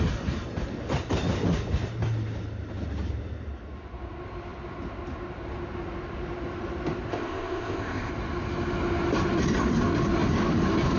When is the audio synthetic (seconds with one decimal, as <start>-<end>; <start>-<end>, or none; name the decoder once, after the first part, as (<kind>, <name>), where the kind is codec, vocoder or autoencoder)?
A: 7.1-8.1 (codec, ZipCodec)